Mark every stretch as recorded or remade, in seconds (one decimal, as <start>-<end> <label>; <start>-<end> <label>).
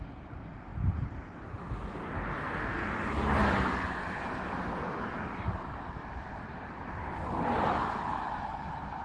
0.0-2.4 recorded; 2.4-2.9 remade; 2.9-9.0 recorded